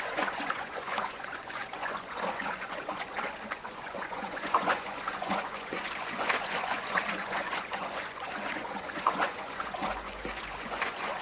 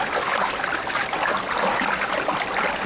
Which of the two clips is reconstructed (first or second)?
first